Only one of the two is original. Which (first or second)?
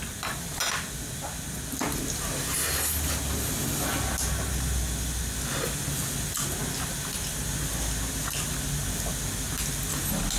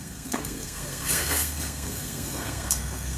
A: first